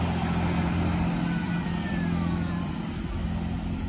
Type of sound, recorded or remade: recorded